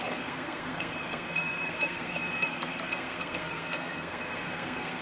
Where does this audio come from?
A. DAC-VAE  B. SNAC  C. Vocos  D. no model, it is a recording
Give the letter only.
B